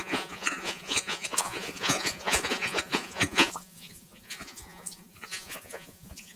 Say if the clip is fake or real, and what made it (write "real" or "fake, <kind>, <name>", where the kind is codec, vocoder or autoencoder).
fake, vocoder, Vocos